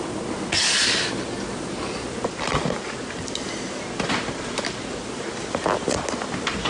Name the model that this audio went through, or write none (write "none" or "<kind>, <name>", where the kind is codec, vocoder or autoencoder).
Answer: none